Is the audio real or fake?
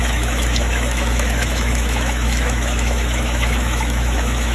fake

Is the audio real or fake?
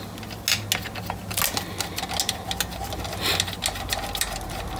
real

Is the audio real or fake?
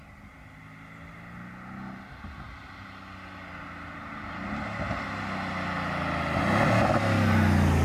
real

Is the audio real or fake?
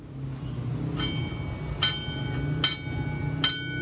real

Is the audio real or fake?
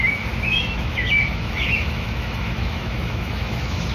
fake